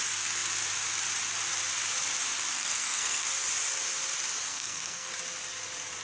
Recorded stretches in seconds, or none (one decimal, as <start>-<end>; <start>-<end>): 0.0-2.5; 3.3-4.5; 5.1-6.0